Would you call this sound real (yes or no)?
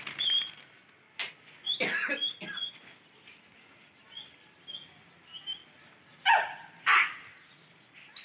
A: yes